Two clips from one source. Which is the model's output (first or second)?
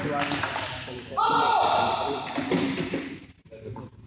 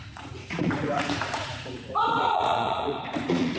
second